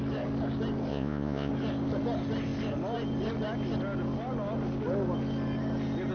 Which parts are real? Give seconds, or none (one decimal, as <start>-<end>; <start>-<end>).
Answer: 0.0-0.9; 1.5-6.1